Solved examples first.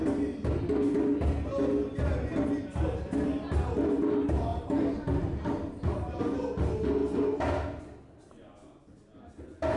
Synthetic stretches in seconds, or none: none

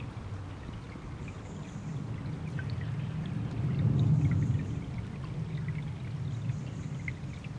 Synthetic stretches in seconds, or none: none

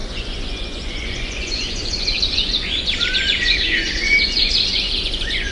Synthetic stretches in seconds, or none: 0.0-5.5 (vocoder, Vocos)

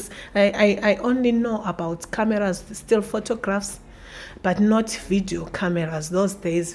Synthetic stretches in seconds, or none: none

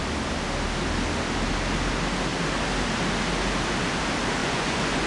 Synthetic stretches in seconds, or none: 4.4-5.1 (vocoder, Vocos)

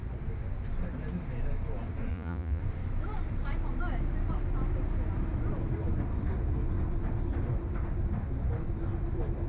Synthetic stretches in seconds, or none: 2.1-2.6 (vocoder, Vocos)

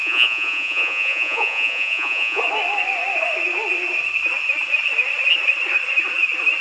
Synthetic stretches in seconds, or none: 0.0-2.4 (vocoder, Vocos)